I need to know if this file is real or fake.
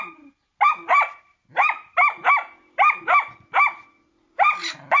real